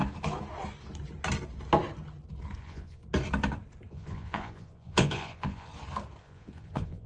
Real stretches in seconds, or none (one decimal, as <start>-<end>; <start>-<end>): 0.0-2.6; 3.0-3.9; 5.7-6.2